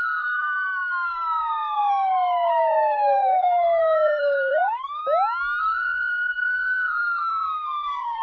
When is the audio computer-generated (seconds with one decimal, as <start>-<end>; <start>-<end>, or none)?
0.0-5.0; 5.6-8.2